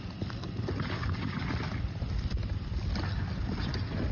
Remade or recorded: recorded